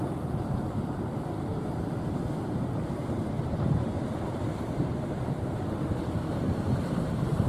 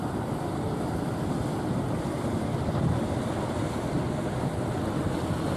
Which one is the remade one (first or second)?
first